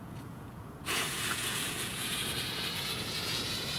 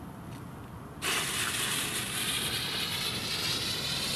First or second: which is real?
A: second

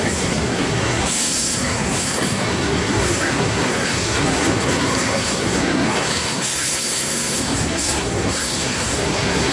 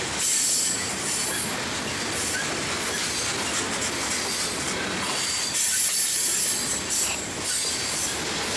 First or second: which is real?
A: second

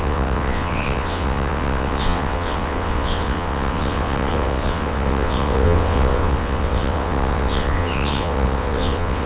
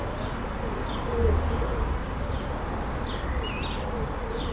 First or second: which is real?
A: second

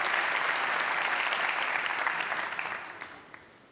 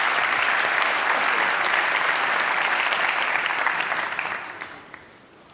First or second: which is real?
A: first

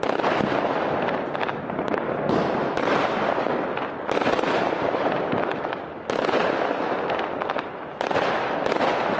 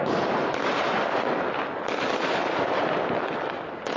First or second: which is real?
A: second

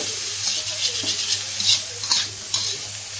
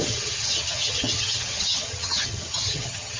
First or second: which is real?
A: first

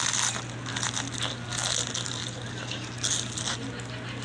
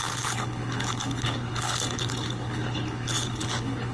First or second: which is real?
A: first